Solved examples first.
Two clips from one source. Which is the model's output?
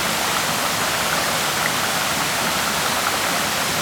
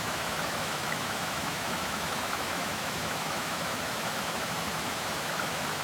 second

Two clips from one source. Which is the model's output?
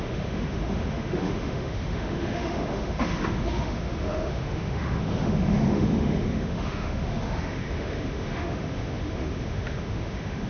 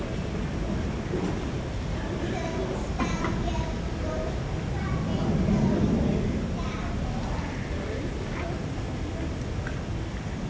first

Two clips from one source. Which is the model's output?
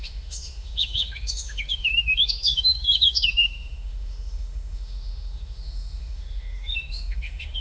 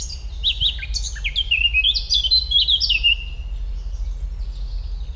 first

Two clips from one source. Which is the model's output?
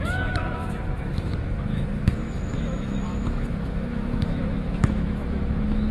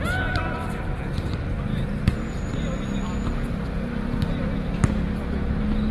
first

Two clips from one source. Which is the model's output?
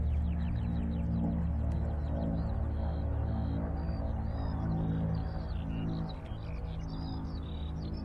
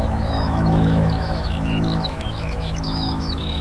second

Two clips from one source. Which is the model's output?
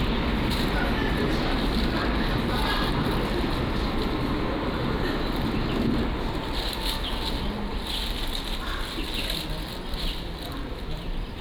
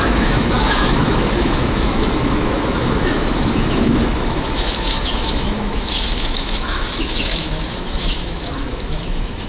second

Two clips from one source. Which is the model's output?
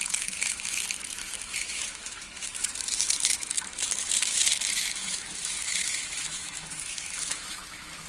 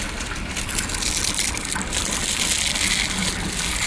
first